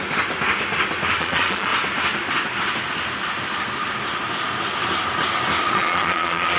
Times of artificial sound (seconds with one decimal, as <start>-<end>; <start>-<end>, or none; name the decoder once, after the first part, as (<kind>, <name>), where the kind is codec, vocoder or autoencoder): 1.2-1.7 (vocoder, Vocos); 5.7-6.6